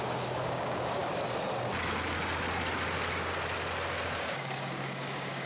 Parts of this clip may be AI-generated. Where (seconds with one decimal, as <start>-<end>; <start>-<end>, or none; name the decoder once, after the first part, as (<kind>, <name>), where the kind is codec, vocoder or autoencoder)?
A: 0.0-1.0 (codec, DAC); 4.3-5.5